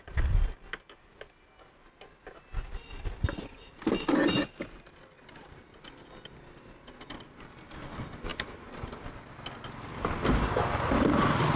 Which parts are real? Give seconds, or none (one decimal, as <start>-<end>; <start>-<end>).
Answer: 0.0-11.6